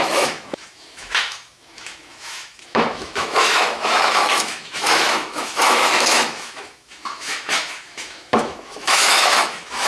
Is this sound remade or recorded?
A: remade